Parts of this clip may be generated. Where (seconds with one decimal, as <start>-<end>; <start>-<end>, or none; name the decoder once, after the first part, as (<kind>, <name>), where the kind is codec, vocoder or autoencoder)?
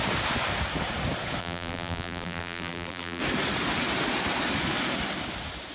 1.4-3.2 (vocoder, BigVGAN v2)